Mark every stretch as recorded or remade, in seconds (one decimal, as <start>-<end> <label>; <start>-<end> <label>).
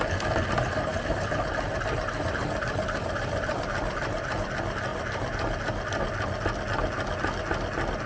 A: 0.0-0.9 recorded; 0.9-4.5 remade; 4.5-8.1 recorded